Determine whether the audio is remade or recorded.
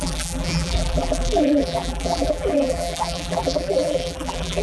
remade